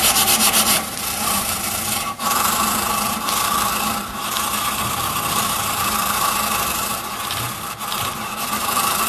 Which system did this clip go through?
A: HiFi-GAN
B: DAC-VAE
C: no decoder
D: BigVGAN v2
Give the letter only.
D